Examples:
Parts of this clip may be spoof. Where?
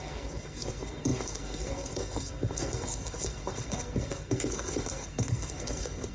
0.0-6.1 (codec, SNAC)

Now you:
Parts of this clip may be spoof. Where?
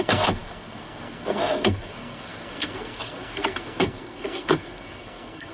0.0-5.5 (codec, SNAC)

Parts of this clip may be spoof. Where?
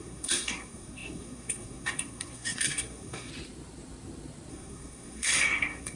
0.0-3.3 (codec, SNAC); 4.5-6.0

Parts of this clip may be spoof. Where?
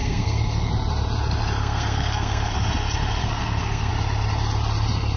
0.0-0.7 (codec, SNAC); 1.6-2.5; 3.2-3.9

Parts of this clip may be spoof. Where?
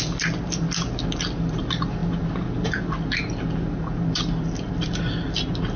none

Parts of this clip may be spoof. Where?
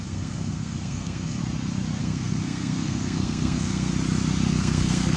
0.0-1.4 (codec, SNAC); 2.0-3.9; 4.5-5.2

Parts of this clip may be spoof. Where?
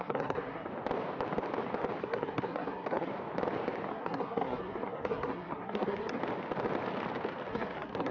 0.0-0.7 (codec, SNAC); 2.0-3.1; 3.9-6.2; 7.5-8.1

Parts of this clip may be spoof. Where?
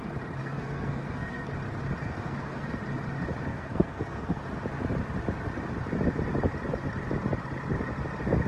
0.4-1.5 (codec, SNAC); 2.0-2.8; 3.5-4.4